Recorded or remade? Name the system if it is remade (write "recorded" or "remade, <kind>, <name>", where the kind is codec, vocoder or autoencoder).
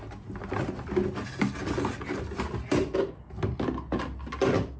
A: recorded